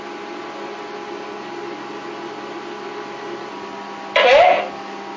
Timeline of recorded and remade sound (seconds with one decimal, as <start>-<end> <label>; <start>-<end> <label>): 0.0-5.2 recorded

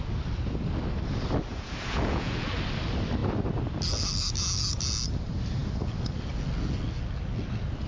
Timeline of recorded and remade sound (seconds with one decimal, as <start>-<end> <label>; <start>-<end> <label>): 0.0-1.5 recorded; 1.5-2.5 remade; 2.5-7.9 recorded

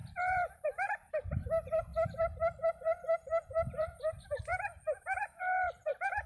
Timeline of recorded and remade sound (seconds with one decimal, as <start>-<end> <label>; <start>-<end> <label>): 0.0-1.9 remade; 1.9-3.7 recorded; 3.7-4.5 remade; 4.5-5.0 recorded; 5.0-6.3 remade

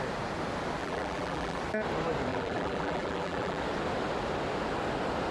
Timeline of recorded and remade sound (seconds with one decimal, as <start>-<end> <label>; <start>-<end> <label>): 0.0-0.8 recorded; 0.8-1.6 remade; 1.6-2.3 recorded; 2.3-3.6 remade; 3.6-5.3 recorded

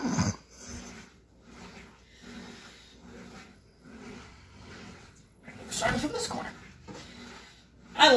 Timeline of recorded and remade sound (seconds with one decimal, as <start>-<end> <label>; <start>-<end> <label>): 0.0-3.5 recorded; 3.5-6.5 remade; 6.5-8.2 recorded